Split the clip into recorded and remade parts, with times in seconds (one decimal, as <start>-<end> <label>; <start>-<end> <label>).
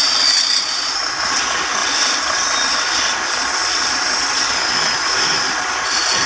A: 0.0-6.3 recorded